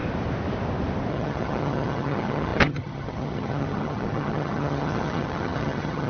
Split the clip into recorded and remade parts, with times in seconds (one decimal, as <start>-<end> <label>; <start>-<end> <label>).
0.0-1.1 recorded; 1.1-6.1 remade